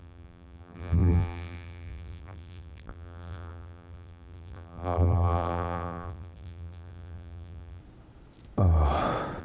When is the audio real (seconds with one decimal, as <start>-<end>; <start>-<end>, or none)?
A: 7.8-9.4